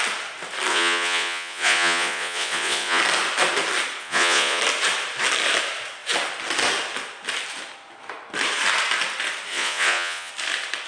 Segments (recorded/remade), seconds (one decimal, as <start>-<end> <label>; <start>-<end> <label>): 0.0-0.7 recorded; 0.7-3.0 remade; 3.0-4.0 recorded; 4.0-4.6 remade; 4.6-9.5 recorded; 9.5-10.3 remade; 10.3-10.9 recorded